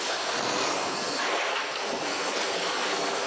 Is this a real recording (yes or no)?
no